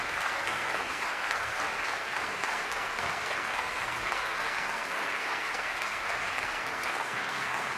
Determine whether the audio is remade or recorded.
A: remade